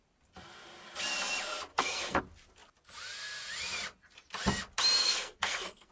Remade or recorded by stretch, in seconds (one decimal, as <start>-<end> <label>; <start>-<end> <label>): 0.0-1.7 recorded; 1.7-2.2 remade; 2.2-5.0 recorded; 5.0-5.9 remade